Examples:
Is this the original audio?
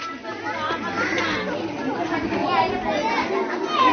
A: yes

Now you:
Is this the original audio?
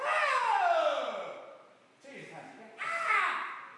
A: yes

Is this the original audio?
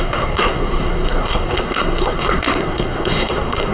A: no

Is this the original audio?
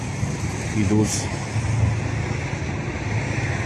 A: yes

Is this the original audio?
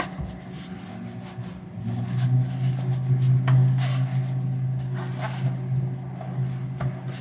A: yes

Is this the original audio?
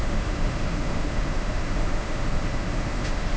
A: no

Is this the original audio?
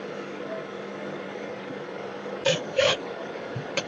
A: no